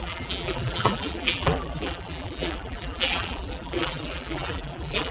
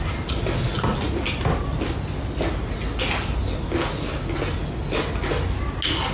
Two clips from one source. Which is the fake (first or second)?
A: first